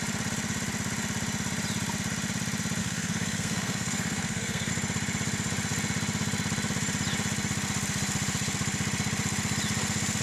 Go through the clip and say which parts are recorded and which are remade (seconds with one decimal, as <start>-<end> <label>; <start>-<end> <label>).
0.0-2.8 recorded; 2.8-4.7 remade; 4.7-10.2 recorded